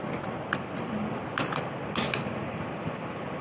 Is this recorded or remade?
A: recorded